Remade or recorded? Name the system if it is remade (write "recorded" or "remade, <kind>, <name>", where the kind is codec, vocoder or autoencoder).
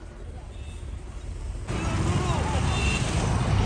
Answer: recorded